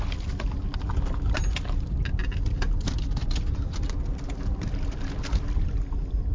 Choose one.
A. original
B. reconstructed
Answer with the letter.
A